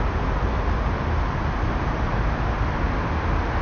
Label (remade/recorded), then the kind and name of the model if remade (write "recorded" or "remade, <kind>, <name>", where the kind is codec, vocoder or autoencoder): recorded